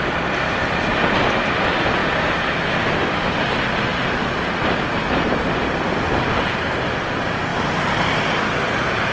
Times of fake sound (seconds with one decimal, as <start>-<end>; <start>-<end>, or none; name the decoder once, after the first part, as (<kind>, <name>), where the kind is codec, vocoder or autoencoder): none